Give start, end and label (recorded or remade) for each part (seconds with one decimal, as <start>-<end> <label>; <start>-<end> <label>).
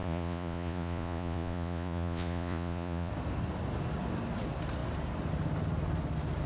0.0-3.1 remade; 3.1-6.5 recorded